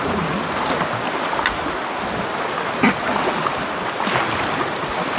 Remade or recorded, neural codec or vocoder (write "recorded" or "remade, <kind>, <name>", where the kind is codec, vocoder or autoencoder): recorded